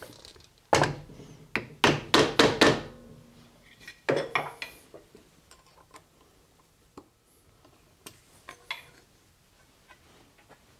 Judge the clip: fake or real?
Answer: real